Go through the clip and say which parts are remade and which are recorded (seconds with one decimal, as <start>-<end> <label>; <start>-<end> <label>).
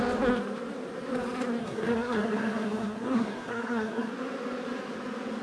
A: 0.0-1.6 recorded; 1.6-4.1 remade; 4.1-5.4 recorded